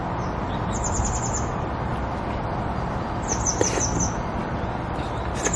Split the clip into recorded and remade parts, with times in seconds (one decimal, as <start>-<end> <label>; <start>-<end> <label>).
0.0-5.6 recorded